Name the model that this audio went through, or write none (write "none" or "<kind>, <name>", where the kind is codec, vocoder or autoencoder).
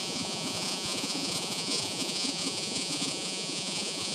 vocoder, Vocos